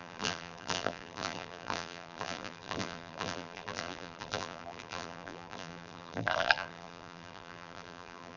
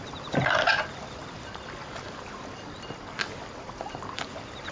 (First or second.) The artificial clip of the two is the first